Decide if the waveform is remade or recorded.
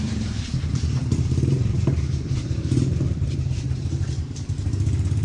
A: remade